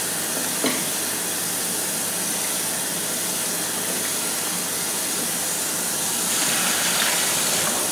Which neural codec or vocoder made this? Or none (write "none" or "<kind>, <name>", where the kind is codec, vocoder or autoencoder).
none